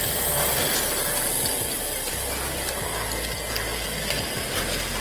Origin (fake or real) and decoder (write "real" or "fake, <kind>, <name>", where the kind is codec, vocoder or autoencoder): real